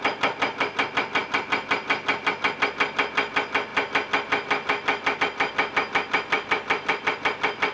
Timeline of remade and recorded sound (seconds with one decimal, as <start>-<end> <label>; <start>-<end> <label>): 0.0-7.7 recorded